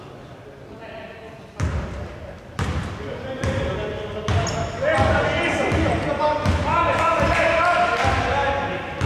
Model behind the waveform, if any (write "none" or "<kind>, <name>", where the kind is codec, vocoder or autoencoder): none